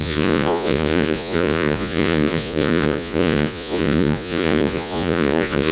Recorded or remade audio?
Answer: remade